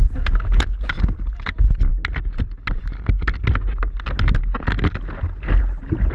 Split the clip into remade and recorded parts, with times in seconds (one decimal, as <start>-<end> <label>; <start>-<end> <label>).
0.0-6.1 recorded